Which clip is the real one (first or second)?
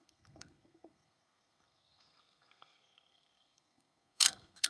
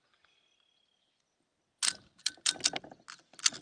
second